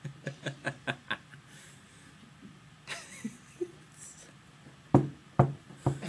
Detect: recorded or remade recorded